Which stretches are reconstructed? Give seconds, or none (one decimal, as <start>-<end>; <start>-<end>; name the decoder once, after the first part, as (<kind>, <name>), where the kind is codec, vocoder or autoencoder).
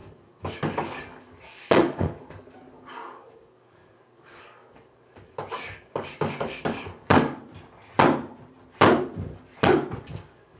0.0-7.4 (codec, DAC); 10.0-10.6